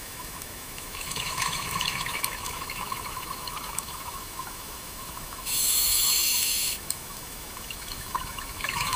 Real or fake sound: fake